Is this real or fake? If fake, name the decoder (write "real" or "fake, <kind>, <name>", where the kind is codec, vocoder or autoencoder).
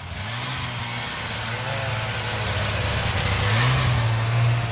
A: real